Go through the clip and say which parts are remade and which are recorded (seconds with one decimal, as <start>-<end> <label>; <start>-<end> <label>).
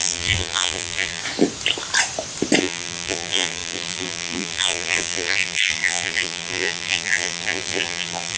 0.0-1.2 remade; 1.2-2.6 recorded; 2.6-8.4 remade